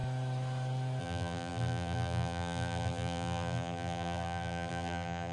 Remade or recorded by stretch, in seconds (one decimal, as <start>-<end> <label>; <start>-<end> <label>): 0.0-1.0 recorded; 1.0-5.3 remade